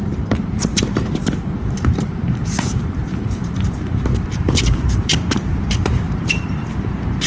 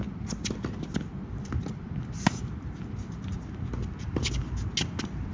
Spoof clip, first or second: first